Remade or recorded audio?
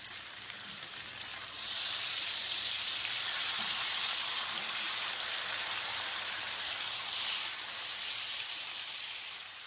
remade